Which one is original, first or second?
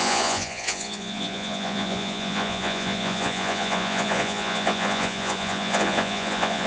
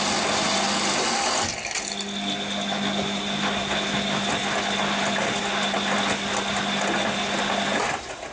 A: second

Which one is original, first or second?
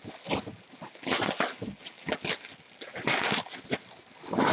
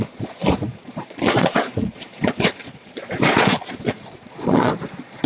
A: first